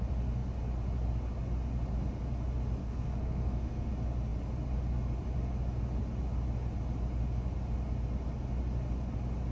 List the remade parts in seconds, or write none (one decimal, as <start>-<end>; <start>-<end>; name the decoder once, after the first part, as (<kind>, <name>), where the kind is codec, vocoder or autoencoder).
2.8-3.9 (codec, SNAC)